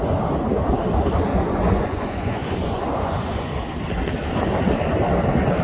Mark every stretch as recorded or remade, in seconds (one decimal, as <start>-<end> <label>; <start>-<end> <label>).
0.0-1.3 recorded; 1.3-3.5 remade; 3.5-5.6 recorded